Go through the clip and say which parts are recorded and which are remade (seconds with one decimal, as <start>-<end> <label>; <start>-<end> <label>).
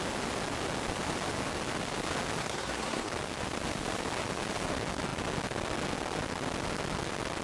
0.0-2.4 recorded; 2.4-3.1 remade; 3.1-7.4 recorded